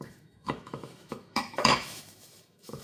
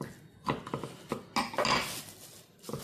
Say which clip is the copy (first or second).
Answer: first